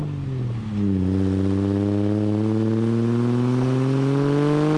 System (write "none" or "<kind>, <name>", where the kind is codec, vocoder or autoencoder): none